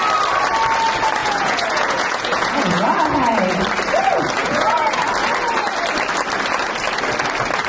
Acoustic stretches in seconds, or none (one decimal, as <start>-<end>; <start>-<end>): 0.0-1.2; 3.4-4.4; 5.0-7.7